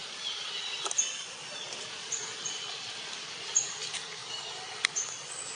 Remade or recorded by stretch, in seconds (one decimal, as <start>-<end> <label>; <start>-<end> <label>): 0.0-2.4 recorded; 2.4-4.2 remade; 4.2-5.6 recorded